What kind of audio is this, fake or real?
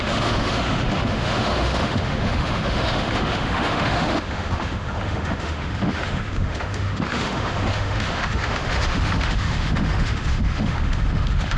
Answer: fake